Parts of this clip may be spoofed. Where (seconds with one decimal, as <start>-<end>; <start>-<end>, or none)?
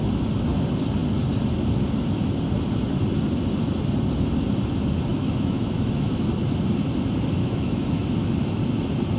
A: 5.1-6.3; 7.4-8.6